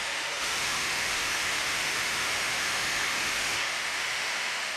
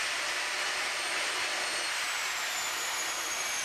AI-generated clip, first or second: first